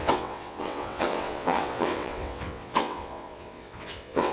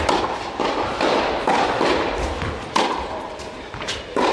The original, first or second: second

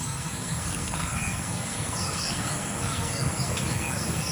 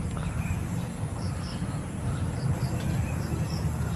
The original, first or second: second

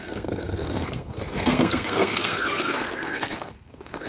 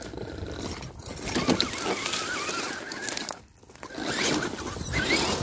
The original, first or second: second